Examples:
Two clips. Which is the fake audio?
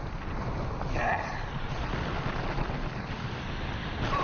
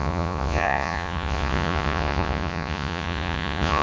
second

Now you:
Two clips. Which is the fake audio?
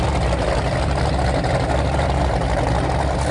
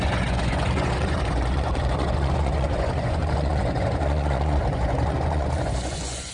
second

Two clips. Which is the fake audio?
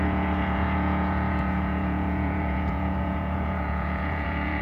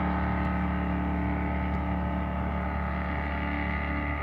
first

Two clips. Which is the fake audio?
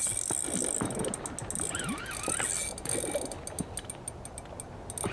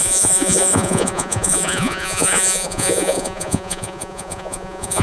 second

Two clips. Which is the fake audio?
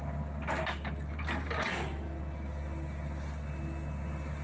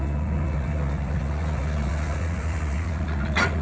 second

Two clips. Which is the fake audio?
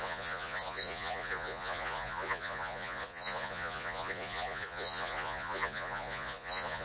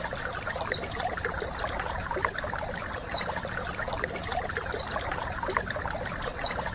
first